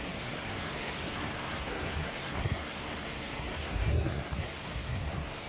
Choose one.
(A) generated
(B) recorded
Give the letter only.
A